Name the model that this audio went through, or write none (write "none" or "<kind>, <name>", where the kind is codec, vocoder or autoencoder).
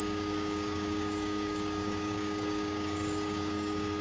codec, DAC